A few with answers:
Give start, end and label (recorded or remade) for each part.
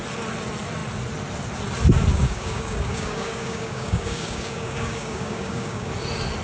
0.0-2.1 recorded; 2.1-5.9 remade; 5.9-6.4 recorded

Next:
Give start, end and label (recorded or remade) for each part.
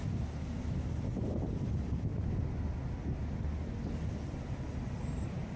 0.0-5.6 recorded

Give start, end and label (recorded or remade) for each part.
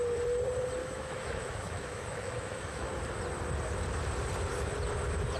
0.0-0.8 recorded; 0.8-2.9 remade; 2.9-5.4 recorded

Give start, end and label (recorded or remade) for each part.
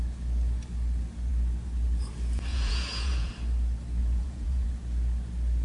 0.0-2.5 recorded; 2.5-3.3 remade; 3.3-4.0 recorded; 4.0-4.7 remade; 4.7-5.6 recorded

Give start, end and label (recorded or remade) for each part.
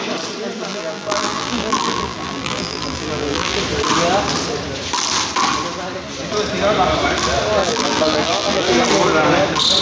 0.0-0.7 recorded; 0.7-3.6 remade; 3.6-7.6 recorded; 7.6-8.7 remade; 8.7-9.8 recorded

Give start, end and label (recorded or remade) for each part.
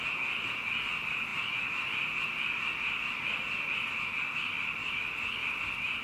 0.0-6.0 recorded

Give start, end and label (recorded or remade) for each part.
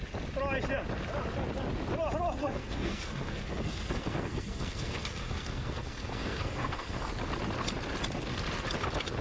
0.0-2.4 recorded; 2.4-7.1 remade; 7.1-9.2 recorded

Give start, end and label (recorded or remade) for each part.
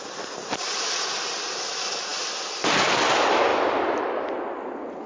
0.0-5.1 recorded